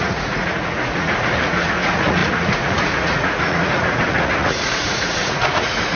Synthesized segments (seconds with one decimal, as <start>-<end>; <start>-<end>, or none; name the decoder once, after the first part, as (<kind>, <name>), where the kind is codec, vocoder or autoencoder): 0.0-6.0 (vocoder, Vocos)